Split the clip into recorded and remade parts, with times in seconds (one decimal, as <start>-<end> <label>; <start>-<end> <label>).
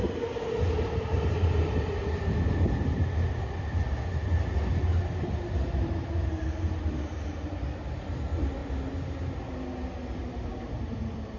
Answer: 0.0-11.4 recorded